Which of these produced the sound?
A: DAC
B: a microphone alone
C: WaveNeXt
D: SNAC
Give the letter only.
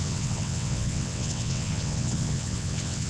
C